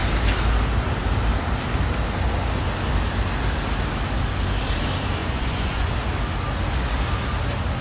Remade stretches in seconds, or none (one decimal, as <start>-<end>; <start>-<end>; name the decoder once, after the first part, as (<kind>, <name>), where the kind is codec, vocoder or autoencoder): 5.2-5.9 (vocoder, Vocos)